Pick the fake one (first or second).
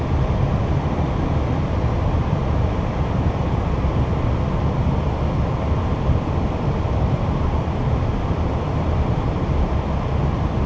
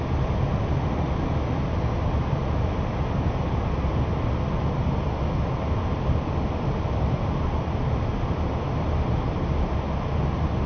first